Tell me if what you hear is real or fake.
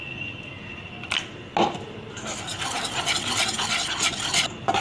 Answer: real